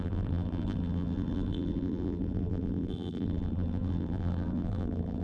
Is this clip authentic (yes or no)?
no